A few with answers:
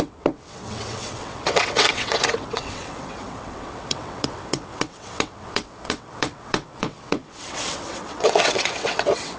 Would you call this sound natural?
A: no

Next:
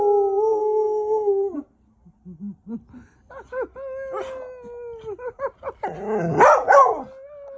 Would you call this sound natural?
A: yes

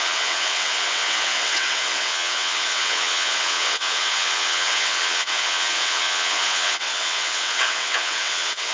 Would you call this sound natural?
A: no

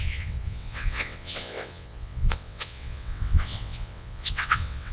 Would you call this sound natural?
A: no